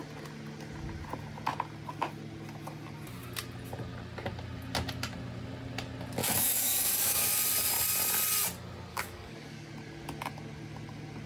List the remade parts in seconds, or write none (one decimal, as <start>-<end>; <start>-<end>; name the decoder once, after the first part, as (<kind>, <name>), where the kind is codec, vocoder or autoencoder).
6.2-7.2 (codec, DAC); 8.9-9.7